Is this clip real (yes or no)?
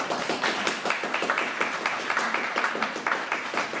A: yes